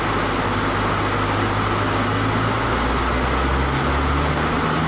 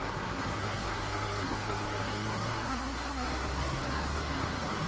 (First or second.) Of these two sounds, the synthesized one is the second